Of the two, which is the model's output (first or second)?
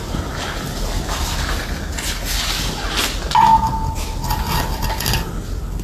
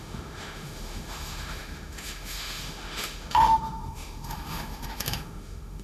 second